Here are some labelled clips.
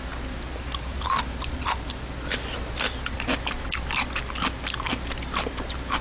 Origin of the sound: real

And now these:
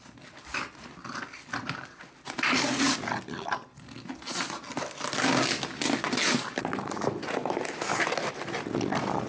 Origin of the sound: real